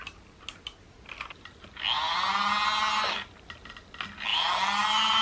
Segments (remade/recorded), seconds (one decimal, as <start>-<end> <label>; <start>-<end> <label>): 0.0-4.3 recorded; 4.3-5.2 remade